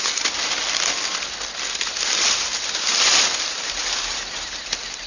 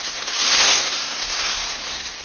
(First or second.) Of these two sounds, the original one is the first